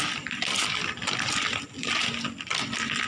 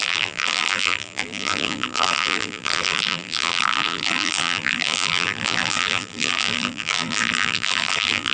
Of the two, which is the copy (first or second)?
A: second